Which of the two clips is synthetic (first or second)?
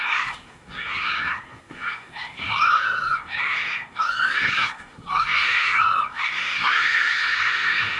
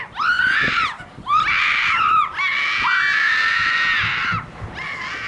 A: first